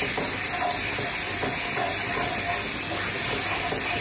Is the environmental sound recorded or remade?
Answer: recorded